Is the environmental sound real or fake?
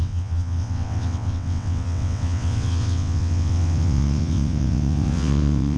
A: fake